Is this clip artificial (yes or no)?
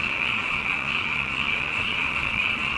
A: yes